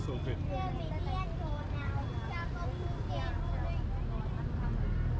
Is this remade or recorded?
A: recorded